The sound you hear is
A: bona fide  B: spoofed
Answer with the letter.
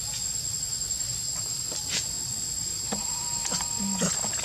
A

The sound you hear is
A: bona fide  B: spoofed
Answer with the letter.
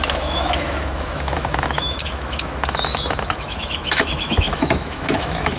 B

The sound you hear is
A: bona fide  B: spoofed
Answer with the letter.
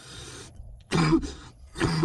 B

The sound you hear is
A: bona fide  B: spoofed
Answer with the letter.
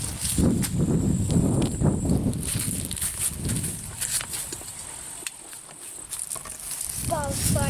A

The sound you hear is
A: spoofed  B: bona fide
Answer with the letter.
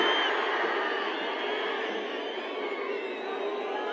B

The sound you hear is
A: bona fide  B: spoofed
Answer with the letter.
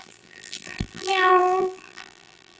B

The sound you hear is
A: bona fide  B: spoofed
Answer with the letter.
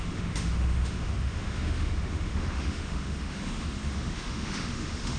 B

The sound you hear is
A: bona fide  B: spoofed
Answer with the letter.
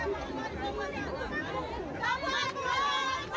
A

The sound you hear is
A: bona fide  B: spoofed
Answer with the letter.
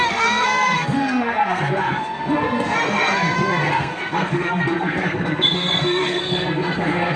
B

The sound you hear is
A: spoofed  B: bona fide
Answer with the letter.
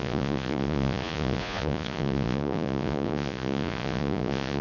A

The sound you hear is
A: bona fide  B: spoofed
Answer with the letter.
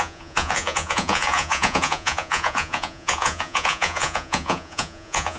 B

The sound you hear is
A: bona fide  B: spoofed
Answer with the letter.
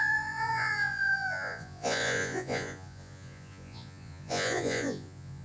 B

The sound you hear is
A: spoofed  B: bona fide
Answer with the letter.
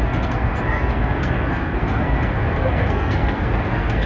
A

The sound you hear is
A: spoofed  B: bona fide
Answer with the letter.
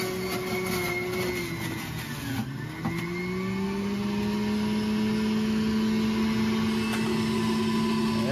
B